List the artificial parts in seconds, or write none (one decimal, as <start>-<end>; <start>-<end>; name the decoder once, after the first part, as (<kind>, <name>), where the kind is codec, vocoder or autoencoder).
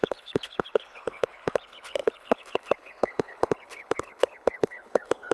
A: 0.0-5.3 (codec, HILCodec)